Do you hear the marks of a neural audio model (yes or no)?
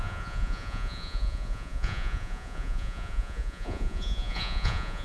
yes